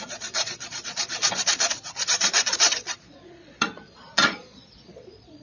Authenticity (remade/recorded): remade